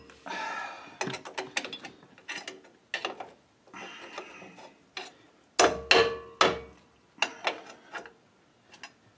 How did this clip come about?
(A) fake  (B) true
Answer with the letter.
B